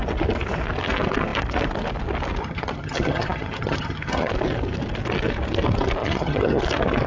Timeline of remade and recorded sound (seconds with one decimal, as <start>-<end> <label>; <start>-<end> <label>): 0.0-2.4 recorded; 2.4-4.3 remade; 4.3-6.0 recorded; 6.0-6.6 remade; 6.6-7.1 recorded